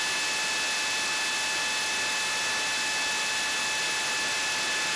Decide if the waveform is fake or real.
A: real